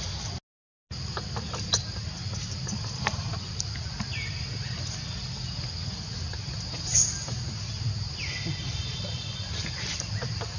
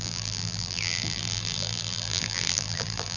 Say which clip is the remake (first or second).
second